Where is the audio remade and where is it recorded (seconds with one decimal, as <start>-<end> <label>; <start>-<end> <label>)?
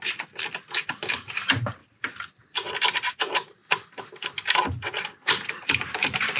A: 0.0-1.8 remade; 1.8-3.1 recorded; 3.1-3.6 remade; 3.6-5.2 recorded; 5.2-6.4 remade